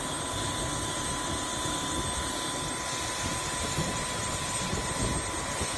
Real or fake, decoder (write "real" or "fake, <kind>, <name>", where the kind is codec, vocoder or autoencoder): real